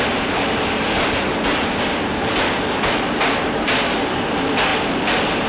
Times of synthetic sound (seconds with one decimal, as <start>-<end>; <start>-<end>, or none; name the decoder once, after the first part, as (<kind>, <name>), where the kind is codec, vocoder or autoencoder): none

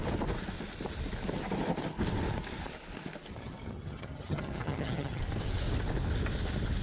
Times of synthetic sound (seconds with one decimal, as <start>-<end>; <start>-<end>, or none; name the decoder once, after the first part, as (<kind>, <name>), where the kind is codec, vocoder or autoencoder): 3.3-5.2 (vocoder, HiFi-GAN)